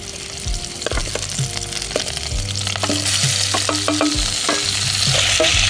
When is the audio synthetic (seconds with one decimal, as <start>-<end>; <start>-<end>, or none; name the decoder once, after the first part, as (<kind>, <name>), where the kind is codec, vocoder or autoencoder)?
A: none